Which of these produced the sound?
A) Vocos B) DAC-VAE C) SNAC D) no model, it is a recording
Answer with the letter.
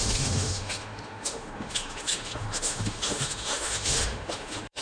B